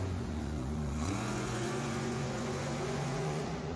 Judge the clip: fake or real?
fake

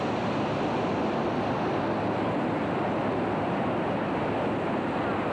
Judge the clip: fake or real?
real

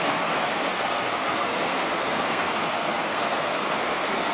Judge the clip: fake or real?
fake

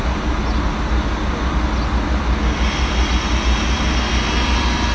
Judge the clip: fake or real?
real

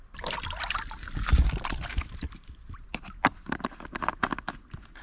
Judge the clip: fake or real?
fake